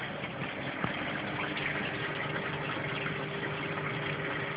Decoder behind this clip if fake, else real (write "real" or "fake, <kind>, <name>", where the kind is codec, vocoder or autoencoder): real